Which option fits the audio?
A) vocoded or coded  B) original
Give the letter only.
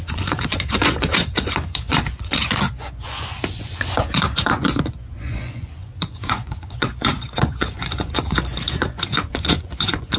A